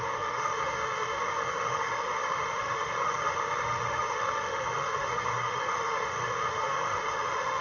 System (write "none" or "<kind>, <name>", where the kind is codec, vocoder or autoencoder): autoencoder, DAC-VAE